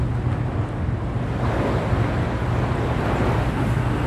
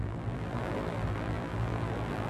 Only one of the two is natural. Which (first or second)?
first